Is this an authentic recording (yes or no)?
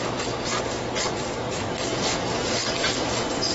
yes